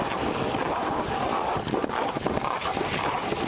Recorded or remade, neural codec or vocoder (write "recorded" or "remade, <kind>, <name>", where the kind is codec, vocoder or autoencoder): recorded